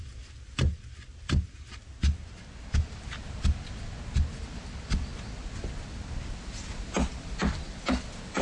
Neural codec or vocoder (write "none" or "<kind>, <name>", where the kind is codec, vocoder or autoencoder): none